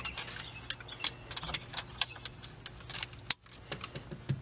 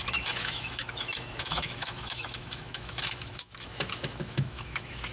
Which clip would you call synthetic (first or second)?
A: second